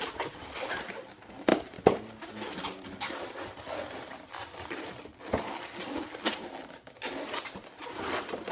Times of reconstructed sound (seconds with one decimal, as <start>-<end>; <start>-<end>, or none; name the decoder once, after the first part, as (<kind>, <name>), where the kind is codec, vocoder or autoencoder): none